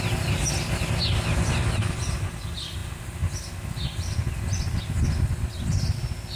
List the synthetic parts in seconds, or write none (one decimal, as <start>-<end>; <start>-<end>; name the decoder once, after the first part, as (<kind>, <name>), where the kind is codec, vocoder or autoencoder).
none

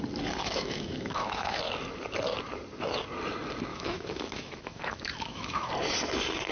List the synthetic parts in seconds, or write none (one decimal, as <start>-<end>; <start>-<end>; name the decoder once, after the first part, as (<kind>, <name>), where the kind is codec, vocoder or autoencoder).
0.4-1.6 (autoencoder, DAC-VAE); 3.7-5.7